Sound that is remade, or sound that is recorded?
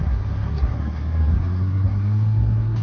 remade